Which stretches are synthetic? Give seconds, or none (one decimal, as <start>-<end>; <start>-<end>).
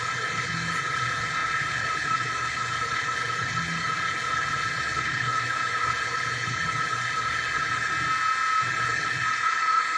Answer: 0.0-7.9; 8.7-10.0